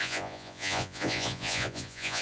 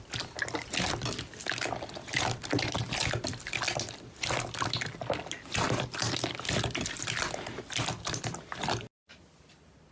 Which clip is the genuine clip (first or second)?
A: second